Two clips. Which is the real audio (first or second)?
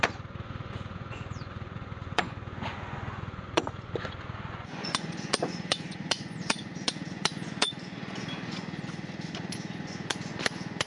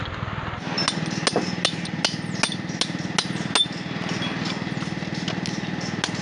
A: second